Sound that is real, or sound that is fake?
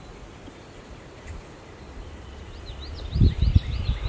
fake